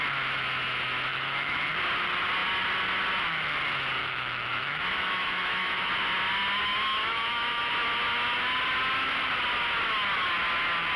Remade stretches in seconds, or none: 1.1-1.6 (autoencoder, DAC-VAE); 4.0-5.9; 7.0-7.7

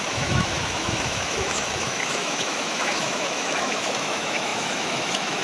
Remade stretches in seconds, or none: 0.0-5.4 (autoencoder, DAC-VAE)